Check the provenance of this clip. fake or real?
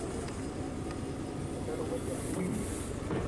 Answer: real